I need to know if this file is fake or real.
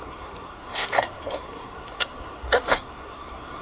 fake